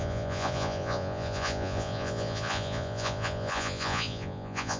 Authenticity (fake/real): fake